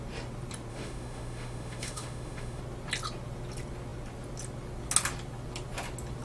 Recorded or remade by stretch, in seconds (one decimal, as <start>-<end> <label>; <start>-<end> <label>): 0.0-0.7 recorded; 0.7-2.6 remade; 2.6-6.2 recorded